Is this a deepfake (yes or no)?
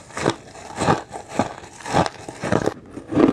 no